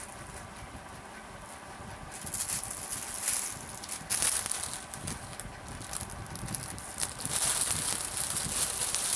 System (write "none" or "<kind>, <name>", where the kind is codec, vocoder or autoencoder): none